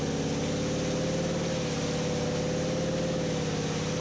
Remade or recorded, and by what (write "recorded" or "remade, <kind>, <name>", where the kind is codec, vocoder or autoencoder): recorded